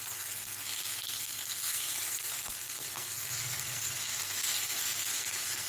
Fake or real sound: fake